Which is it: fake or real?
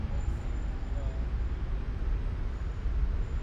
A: real